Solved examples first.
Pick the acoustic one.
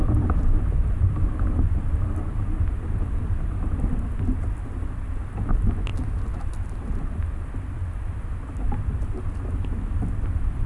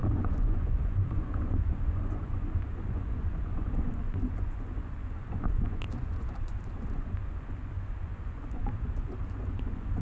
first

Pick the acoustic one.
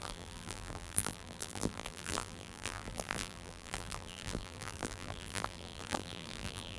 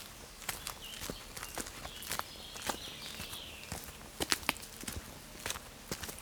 second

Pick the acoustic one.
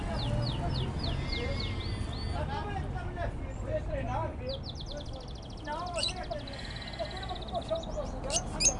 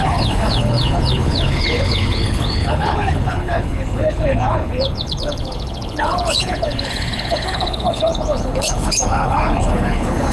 first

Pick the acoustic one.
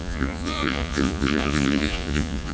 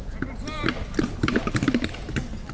second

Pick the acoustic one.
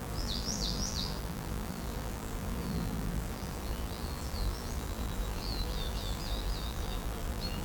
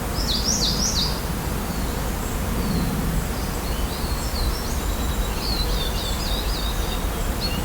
second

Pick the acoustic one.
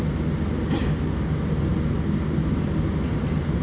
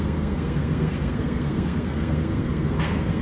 first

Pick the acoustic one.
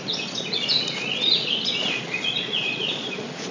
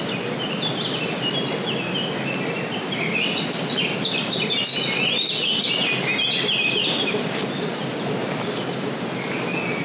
second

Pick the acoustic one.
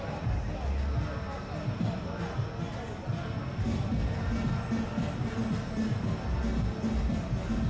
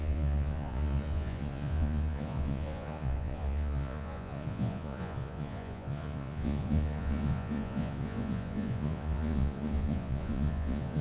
first